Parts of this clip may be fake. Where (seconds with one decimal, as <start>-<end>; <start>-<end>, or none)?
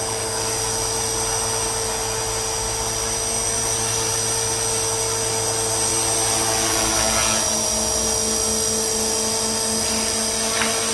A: none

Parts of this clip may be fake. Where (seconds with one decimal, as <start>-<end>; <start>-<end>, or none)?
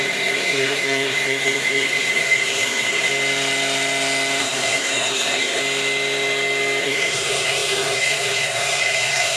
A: 0.0-3.1; 4.4-5.6; 6.8-9.4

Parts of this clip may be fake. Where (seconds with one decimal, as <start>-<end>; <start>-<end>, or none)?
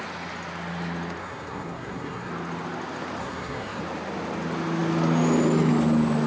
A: 1.2-2.3; 3.2-3.8